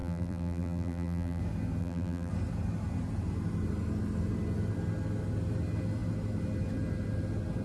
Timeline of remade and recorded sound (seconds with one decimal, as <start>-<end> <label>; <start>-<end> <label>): 0.0-1.4 remade; 1.4-1.8 recorded; 1.8-2.3 remade; 2.3-7.6 recorded